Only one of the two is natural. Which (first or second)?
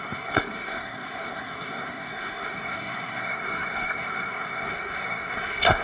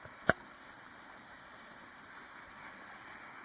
second